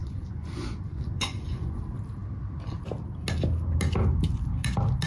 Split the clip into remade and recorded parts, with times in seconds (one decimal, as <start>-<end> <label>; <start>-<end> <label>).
0.0-1.8 remade; 1.8-5.1 recorded